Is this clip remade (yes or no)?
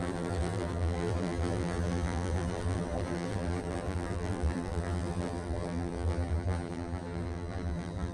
yes